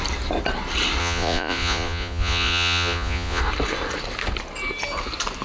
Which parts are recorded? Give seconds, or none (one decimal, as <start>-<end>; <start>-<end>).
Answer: 0.0-1.0; 3.4-5.4

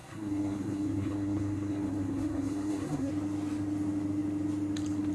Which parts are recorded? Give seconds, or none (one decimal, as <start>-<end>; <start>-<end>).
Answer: 3.1-5.1

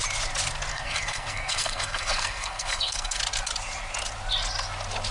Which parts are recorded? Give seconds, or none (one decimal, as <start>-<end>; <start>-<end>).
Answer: 0.0-0.7; 3.2-5.1

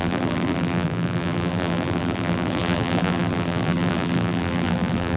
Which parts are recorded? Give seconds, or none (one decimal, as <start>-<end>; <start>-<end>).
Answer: none

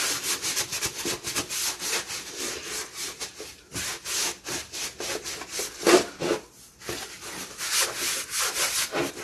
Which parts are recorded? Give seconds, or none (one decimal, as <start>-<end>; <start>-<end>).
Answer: 0.0-9.2

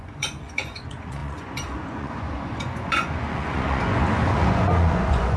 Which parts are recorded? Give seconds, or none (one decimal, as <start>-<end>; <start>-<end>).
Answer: none